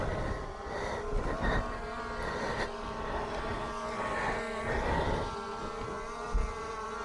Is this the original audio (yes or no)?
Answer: yes